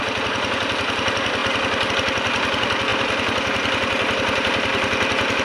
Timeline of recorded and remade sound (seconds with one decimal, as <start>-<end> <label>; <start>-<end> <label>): 0.0-2.9 recorded; 2.9-5.4 remade

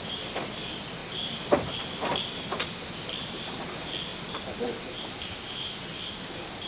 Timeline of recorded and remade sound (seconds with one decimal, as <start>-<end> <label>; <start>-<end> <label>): 0.0-6.7 recorded

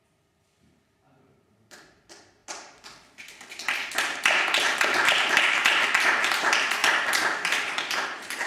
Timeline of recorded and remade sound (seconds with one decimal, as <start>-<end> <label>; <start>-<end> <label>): 0.0-2.4 remade; 2.4-4.2 recorded; 4.2-5.6 remade; 5.6-6.1 recorded; 6.1-6.8 remade; 6.8-8.5 recorded